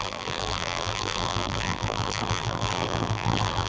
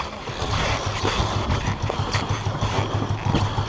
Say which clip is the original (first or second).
second